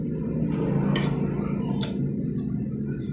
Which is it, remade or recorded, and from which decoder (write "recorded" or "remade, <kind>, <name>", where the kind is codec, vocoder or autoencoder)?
recorded